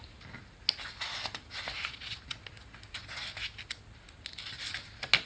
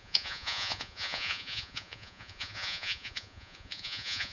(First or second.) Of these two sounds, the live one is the first